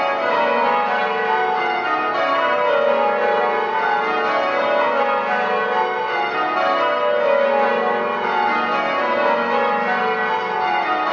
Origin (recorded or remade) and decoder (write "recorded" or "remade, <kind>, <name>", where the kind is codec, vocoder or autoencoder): recorded